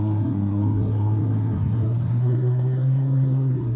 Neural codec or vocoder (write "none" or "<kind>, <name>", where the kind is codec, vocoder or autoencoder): codec, SNAC